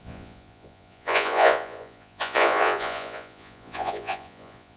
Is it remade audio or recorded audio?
remade